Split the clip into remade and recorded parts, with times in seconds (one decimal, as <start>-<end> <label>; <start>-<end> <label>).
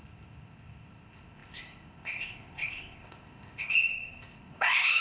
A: 0.0-5.0 remade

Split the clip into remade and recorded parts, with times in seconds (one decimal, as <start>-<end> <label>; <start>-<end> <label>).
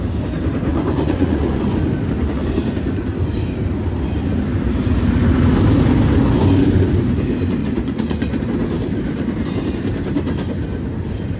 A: 0.0-0.7 recorded; 0.7-1.8 remade; 1.8-7.6 recorded; 7.6-8.4 remade; 8.4-11.4 recorded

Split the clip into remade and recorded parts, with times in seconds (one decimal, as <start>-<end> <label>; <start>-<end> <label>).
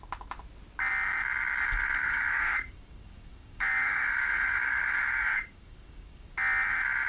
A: 0.0-2.0 recorded; 2.0-6.3 remade; 6.3-7.1 recorded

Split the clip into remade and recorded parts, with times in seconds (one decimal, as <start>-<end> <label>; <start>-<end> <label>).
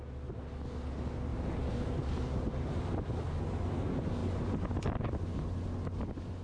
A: 0.0-1.3 recorded; 1.3-3.6 remade; 3.6-6.4 recorded